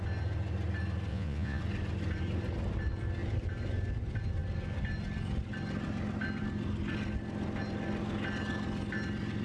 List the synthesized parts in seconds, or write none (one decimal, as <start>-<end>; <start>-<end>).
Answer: 1.1-1.6